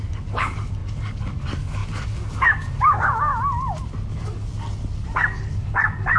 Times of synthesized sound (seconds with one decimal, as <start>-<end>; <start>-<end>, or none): 0.0-3.3; 4.1-4.5; 5.1-6.2